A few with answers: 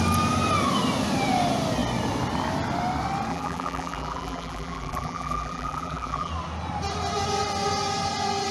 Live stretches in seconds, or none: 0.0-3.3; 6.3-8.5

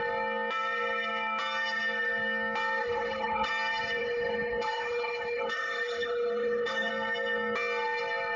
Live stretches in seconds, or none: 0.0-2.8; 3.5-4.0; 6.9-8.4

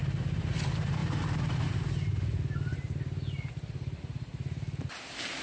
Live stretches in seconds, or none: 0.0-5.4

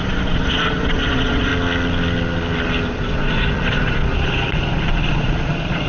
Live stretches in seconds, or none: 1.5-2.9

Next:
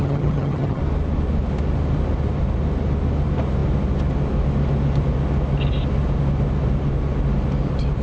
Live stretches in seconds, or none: 0.8-8.0